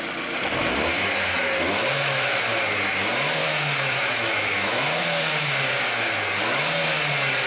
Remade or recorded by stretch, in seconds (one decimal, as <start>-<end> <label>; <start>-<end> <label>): 0.0-1.8 recorded; 1.8-2.4 remade; 2.4-3.4 recorded; 3.4-5.5 remade; 5.5-7.5 recorded